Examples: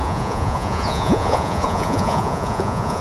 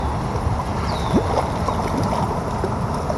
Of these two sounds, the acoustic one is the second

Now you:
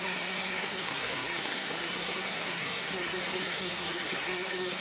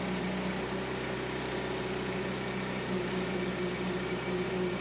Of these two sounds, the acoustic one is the second